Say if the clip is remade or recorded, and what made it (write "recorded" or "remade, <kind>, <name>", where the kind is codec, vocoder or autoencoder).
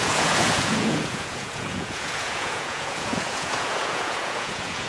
remade, vocoder, Vocos